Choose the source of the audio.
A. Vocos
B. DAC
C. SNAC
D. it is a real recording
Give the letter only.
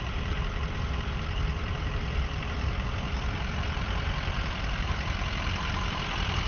D